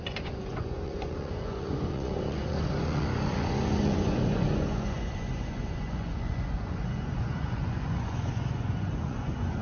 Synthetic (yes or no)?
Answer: yes